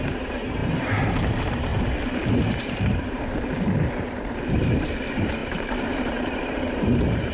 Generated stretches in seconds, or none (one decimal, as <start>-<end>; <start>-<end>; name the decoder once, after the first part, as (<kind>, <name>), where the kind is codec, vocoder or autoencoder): 0.0-1.7 (vocoder, BigVGAN v2); 2.8-7.3